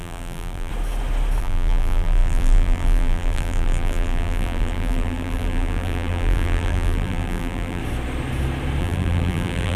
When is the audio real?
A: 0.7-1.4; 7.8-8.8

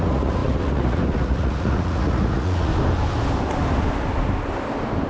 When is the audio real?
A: 2.7-5.1

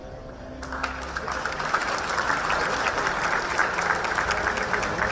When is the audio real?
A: 0.0-5.1

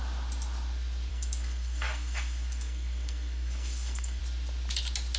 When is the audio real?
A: 0.0-1.1; 4.2-5.2

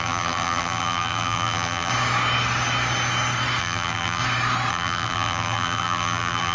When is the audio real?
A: 1.9-3.6; 4.2-4.7

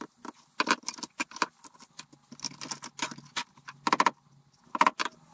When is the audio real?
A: 0.0-5.3

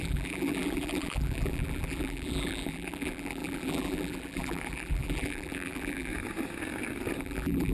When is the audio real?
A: 6.1-7.2

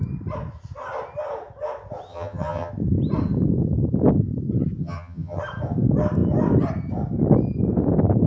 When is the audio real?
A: 0.0-2.1; 2.7-4.8; 5.4-8.3